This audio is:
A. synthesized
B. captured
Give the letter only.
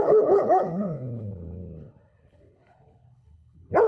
A